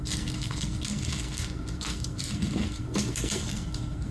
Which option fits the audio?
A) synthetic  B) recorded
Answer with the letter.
A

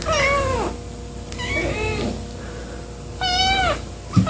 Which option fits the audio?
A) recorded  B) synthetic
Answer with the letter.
A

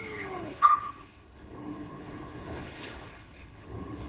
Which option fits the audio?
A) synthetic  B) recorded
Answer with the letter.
A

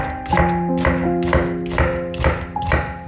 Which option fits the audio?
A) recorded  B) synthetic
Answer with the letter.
A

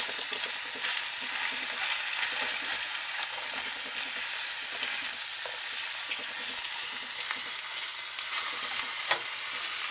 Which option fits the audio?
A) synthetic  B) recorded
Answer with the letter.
B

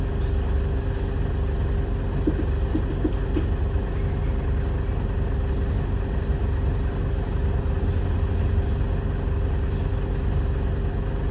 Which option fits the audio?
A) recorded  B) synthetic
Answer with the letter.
A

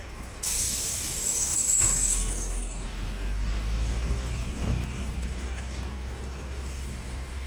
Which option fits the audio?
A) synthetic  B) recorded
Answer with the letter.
A